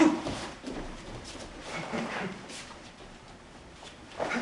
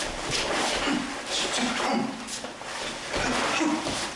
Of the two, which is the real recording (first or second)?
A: second